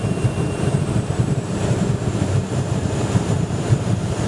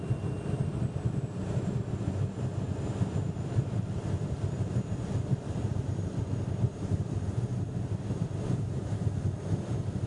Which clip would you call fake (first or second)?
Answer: first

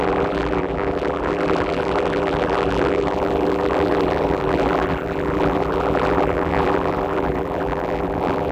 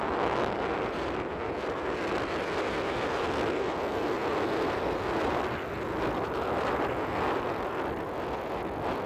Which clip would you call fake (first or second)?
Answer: first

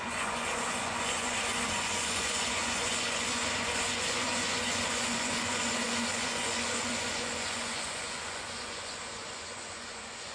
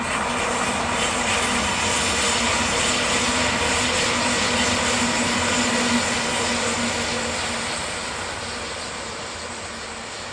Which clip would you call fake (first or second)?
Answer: first